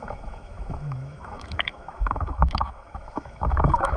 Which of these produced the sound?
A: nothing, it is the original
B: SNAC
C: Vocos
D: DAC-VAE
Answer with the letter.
D